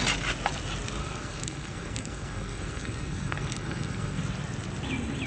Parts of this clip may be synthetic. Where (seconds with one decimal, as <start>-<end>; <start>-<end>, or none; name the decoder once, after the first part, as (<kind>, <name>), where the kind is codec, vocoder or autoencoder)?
1.0-4.2 (codec, SNAC)